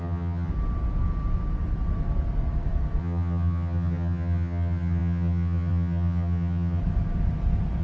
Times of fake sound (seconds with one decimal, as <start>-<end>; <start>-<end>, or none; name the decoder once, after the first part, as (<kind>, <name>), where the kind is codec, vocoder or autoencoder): 0.0-0.5 (vocoder, HiFi-GAN); 3.0-6.8

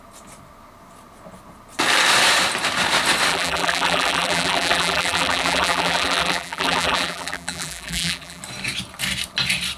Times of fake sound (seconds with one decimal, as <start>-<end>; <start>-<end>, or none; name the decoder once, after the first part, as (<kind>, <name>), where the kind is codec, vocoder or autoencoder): 3.3-8.4 (vocoder, BigVGAN v2)

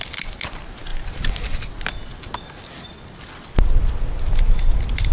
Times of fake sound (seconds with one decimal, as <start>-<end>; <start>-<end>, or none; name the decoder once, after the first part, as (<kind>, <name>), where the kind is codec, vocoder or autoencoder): none

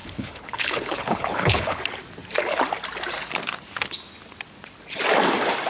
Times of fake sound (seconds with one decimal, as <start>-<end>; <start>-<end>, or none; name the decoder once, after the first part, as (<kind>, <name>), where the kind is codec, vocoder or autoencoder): 0.0-1.8 (codec, HILCodec)

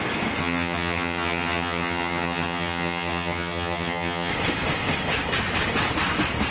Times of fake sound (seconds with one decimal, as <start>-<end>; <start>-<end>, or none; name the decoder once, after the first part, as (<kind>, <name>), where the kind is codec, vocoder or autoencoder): 0.4-4.3 (vocoder, HiFi-GAN)